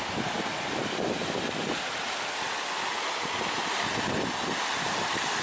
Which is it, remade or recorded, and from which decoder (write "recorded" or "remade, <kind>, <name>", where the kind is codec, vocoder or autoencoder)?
recorded